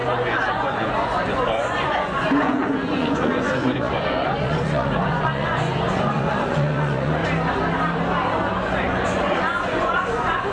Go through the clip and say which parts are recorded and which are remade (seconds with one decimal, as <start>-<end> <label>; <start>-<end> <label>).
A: 0.0-0.5 recorded; 0.5-7.2 remade; 7.2-8.5 recorded; 8.5-10.5 remade